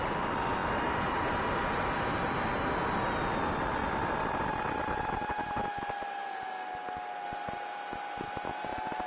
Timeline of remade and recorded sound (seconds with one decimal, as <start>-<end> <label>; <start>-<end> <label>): 0.0-9.1 recorded